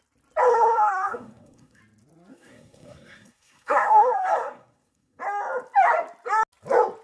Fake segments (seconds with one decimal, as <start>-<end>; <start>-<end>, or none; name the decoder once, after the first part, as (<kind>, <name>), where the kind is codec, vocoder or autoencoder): 0.5-1.8 (codec, SNAC); 2.3-5.2